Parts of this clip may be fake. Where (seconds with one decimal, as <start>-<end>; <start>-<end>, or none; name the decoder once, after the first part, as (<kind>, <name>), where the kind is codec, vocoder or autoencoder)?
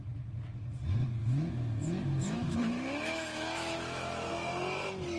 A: 1.2-4.3 (autoencoder, DAC-VAE)